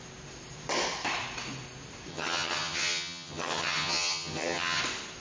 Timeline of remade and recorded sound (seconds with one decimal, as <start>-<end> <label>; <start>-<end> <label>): 0.0-2.1 recorded; 2.1-4.8 remade; 4.8-5.2 recorded